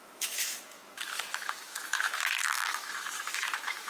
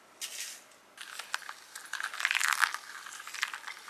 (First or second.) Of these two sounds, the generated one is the first